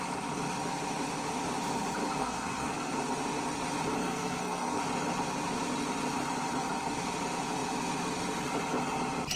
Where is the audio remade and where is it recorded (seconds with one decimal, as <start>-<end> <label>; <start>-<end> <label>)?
0.0-2.2 recorded; 2.2-3.0 remade; 3.0-4.0 recorded; 4.0-4.8 remade; 4.8-9.4 recorded